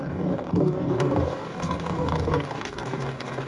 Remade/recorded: remade